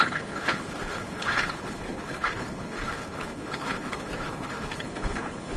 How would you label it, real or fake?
fake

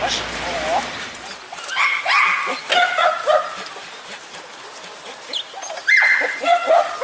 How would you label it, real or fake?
real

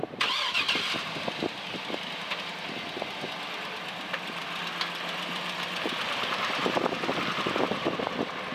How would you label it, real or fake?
real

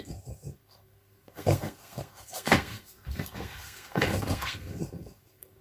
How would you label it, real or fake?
fake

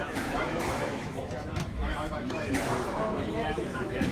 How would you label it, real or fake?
fake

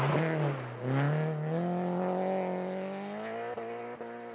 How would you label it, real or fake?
real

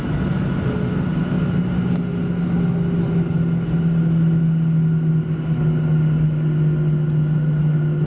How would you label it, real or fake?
real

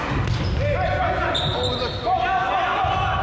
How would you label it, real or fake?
real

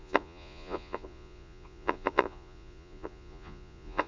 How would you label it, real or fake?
fake